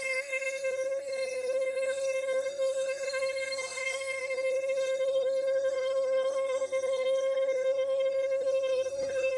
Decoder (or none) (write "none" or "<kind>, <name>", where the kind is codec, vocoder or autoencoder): codec, SNAC